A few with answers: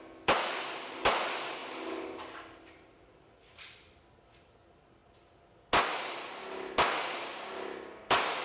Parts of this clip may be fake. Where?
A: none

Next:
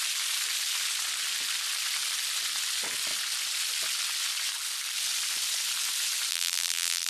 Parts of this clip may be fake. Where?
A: 6.3-7.1

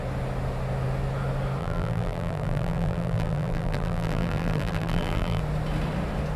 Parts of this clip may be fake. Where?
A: 1.6-5.4

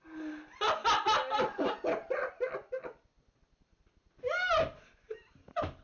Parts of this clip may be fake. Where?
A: none

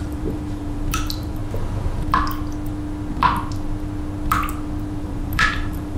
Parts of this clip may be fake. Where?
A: 0.0-1.4; 5.0-6.0